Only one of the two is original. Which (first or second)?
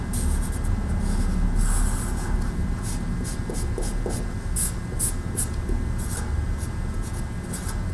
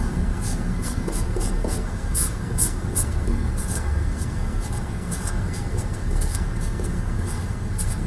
first